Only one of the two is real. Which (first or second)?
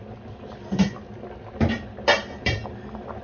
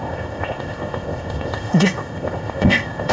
first